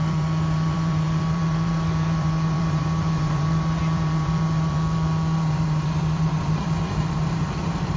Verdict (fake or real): fake